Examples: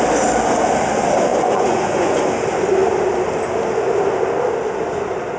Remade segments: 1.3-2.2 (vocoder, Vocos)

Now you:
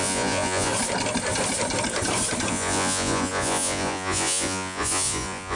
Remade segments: 0.0-0.7 (vocoder, Vocos); 2.5-5.6